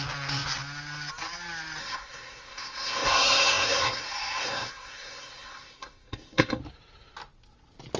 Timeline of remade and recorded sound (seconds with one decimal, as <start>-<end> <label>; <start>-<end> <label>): 0.0-1.8 recorded; 1.8-6.6 remade; 6.6-8.0 recorded